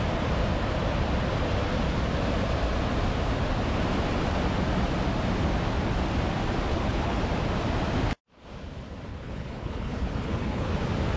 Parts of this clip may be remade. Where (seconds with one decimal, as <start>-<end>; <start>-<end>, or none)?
6.7-7.2; 9.1-10.7